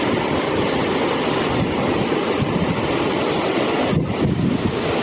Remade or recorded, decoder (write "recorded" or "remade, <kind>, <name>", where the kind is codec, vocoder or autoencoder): recorded